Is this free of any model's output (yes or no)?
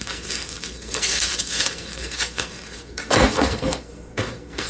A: no